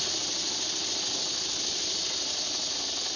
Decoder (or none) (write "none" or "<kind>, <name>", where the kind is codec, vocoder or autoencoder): none